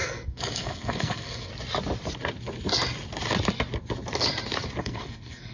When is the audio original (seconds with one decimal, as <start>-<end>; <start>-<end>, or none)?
1.5-4.8